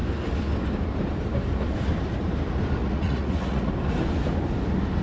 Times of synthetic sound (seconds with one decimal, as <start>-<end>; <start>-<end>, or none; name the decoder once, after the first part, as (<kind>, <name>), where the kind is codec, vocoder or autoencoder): 2.8-3.7 (vocoder, Vocos)